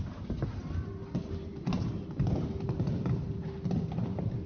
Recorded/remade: recorded